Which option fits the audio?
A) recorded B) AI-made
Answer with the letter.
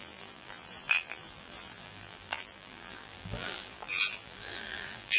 B